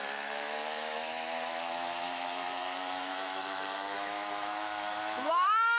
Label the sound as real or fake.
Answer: fake